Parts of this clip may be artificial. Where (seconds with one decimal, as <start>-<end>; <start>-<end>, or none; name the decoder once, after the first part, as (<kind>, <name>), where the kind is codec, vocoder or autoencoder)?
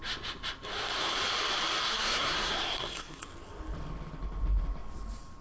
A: 1.8-3.2 (codec, SNAC)